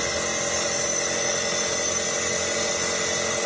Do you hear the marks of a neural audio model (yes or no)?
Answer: no